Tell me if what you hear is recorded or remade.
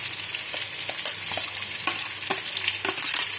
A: recorded